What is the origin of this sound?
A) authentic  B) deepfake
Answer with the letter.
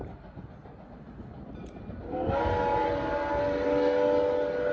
A